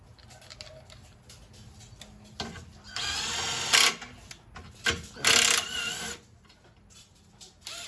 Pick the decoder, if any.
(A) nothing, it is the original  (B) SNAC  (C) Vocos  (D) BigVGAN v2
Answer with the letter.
A